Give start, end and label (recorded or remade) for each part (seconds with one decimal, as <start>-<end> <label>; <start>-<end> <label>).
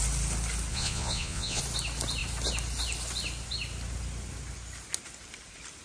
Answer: 0.0-0.7 recorded; 0.7-1.6 remade; 1.6-5.8 recorded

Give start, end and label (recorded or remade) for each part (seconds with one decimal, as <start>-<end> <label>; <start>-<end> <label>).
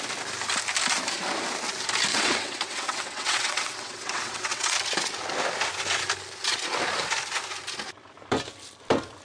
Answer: 0.0-2.1 recorded; 2.1-4.7 remade; 4.7-9.2 recorded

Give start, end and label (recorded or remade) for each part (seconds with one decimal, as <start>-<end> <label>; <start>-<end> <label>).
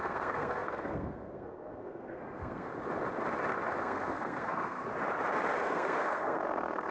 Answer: 0.0-2.7 remade; 2.7-3.8 recorded; 3.8-4.8 remade; 4.8-5.6 recorded; 5.6-6.9 remade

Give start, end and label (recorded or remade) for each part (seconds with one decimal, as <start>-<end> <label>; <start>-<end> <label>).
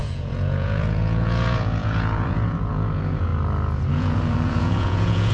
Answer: 0.0-3.3 remade; 3.3-3.9 recorded; 3.9-5.3 remade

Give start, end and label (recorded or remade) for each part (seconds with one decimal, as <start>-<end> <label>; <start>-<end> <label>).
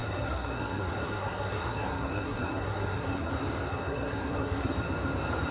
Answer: 0.0-3.3 remade; 3.3-3.7 recorded; 3.7-4.7 remade; 4.7-5.5 recorded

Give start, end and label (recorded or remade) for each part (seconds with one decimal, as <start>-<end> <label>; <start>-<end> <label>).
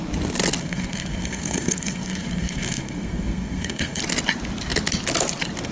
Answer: 0.0-0.6 recorded; 0.6-4.0 remade; 4.0-5.7 recorded